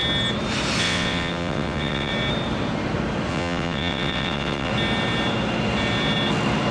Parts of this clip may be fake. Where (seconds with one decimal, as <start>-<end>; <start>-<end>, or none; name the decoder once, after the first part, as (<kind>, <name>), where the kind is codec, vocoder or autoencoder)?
0.8-2.1 (vocoder, WaveNeXt); 3.3-4.7